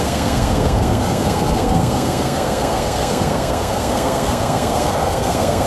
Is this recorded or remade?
remade